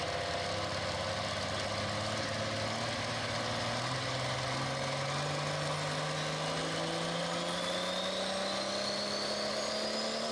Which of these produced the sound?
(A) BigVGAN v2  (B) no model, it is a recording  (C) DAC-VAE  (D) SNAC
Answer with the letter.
B